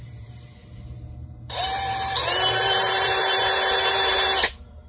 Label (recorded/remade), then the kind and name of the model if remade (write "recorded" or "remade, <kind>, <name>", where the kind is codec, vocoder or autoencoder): remade, vocoder, BigVGAN v2